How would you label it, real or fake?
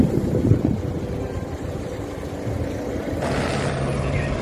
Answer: fake